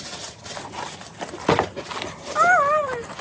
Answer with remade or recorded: recorded